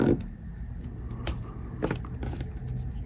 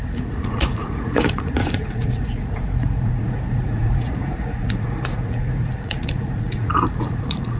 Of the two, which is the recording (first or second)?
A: first